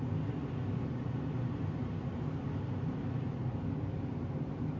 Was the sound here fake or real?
fake